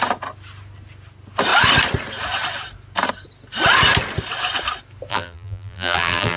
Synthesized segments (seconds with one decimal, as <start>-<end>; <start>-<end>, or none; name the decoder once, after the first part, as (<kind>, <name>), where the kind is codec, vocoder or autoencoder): 5.1-6.4 (vocoder, BigVGAN v2)